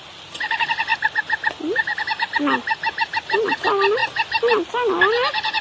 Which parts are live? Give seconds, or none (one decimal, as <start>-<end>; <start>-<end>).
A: 0.0-5.6